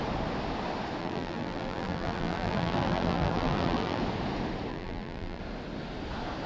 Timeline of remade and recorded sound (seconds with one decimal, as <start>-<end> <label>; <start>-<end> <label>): 0.0-1.0 recorded; 1.0-4.0 remade; 4.0-4.7 recorded; 4.7-5.4 remade; 5.4-6.5 recorded